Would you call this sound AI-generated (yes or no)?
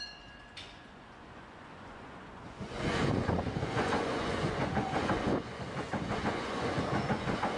yes